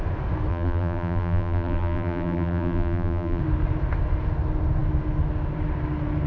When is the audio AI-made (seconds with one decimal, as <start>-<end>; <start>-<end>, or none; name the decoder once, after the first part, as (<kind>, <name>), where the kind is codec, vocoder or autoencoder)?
0.5-3.4 (vocoder, BigVGAN v2)